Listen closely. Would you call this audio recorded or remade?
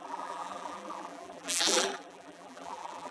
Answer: remade